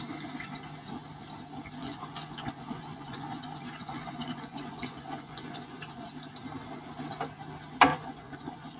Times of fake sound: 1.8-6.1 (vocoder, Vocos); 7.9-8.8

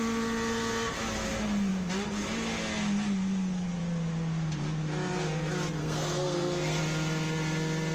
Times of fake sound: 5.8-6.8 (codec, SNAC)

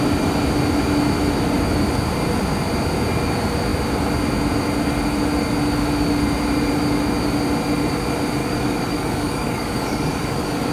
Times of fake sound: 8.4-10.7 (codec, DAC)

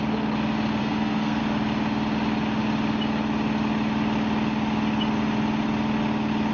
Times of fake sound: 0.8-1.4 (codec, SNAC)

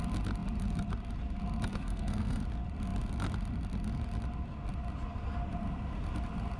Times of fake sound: 1.7-2.4 (codec, SNAC)